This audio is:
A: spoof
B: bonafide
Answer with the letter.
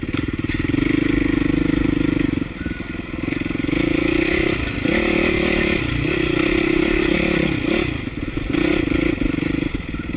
B